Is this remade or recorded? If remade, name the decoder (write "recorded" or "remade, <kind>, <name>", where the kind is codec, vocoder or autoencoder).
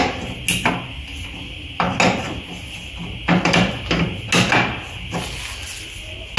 recorded